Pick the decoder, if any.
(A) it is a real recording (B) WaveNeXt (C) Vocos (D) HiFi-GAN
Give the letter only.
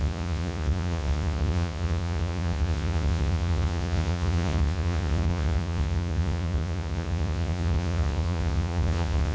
C